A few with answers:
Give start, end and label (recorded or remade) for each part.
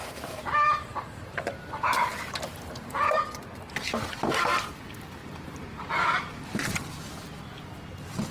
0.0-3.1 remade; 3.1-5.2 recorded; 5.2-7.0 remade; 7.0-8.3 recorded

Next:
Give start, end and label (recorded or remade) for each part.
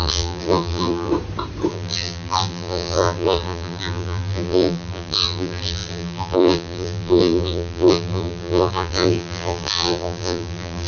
0.0-1.1 remade; 1.1-1.7 recorded; 1.7-10.9 remade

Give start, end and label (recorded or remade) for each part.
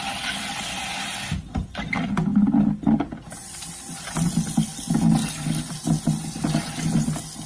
0.0-7.5 recorded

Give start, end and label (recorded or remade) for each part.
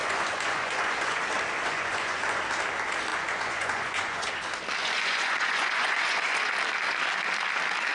0.0-1.2 remade; 1.2-1.6 recorded; 1.6-2.4 remade; 2.4-3.1 recorded; 3.1-4.3 remade; 4.3-4.8 recorded; 4.8-6.5 remade; 6.5-7.9 recorded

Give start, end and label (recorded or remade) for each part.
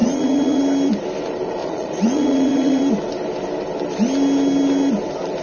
0.0-0.6 remade; 0.6-1.6 recorded; 1.6-2.8 remade; 2.8-5.4 recorded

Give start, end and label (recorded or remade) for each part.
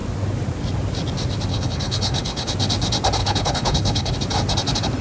0.0-1.5 recorded; 1.5-2.5 remade; 2.5-3.2 recorded; 3.2-4.1 remade; 4.1-5.0 recorded